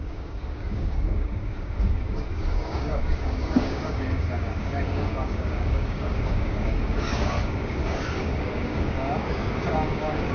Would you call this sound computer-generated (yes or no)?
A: yes